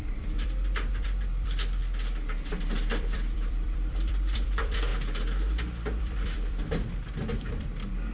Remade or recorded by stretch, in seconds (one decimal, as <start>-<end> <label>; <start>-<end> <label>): 0.0-1.8 remade; 1.8-2.5 recorded; 2.5-4.9 remade; 4.9-6.0 recorded; 6.0-8.1 remade